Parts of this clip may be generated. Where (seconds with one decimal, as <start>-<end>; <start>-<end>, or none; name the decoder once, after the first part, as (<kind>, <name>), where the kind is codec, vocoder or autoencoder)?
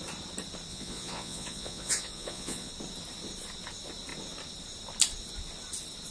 0.7-2.7 (vocoder, Vocos)